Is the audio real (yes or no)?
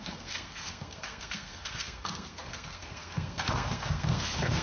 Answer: no